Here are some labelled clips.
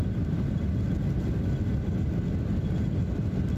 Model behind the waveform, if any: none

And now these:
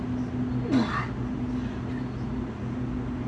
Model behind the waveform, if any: none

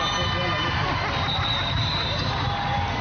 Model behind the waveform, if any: none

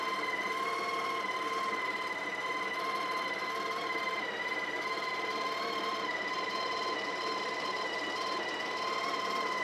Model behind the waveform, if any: none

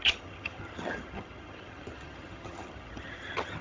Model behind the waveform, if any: vocoder, HiFi-GAN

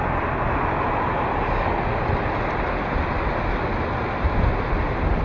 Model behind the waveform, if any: none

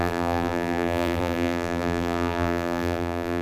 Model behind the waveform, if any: vocoder, BigVGAN v2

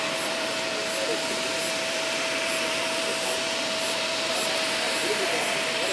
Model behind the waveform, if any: vocoder, BigVGAN v2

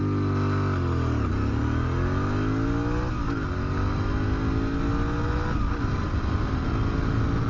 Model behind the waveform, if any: none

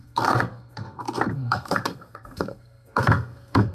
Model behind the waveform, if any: codec, SNAC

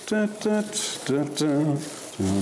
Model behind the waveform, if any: none